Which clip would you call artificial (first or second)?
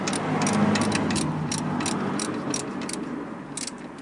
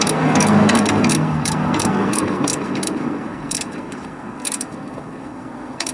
second